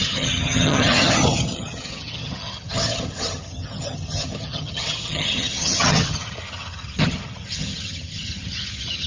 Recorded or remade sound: remade